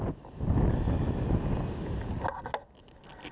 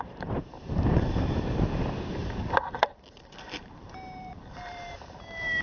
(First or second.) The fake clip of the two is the second